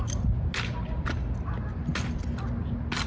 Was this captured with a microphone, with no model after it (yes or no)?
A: yes